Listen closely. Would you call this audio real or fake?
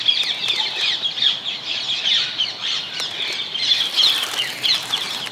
real